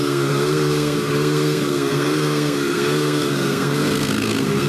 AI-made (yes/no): yes